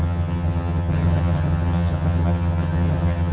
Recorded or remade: remade